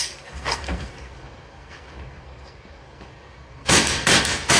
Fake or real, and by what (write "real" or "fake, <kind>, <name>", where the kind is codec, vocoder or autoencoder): fake, codec, SNAC